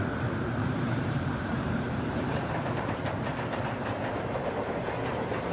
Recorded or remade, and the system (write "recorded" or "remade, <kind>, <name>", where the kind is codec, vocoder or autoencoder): remade, vocoder, BigVGAN v2